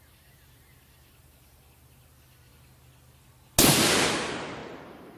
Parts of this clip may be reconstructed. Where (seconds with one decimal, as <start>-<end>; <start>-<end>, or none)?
none